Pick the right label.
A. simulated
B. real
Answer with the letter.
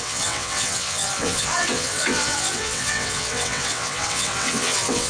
A